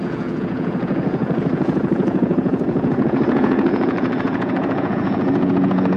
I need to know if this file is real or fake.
fake